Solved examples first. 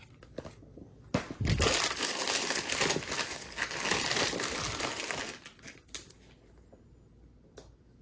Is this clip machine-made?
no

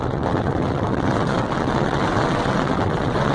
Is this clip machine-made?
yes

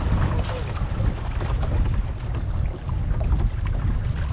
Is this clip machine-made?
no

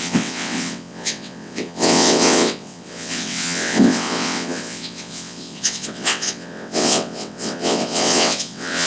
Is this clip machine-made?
yes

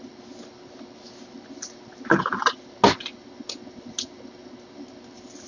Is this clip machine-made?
no